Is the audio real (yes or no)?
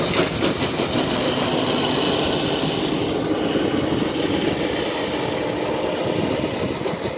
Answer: yes